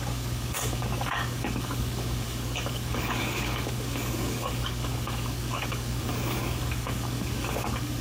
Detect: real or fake fake